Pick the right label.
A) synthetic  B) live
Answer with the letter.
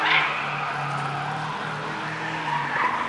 B